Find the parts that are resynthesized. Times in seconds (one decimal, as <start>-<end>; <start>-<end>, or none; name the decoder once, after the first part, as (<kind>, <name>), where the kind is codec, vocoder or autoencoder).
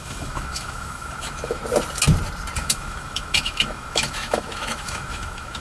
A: 0.0-1.6 (autoencoder, DAC-VAE); 2.6-5.6